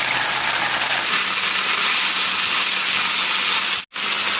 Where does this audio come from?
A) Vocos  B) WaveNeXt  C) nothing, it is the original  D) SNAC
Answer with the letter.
C